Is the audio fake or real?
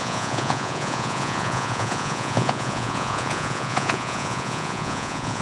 fake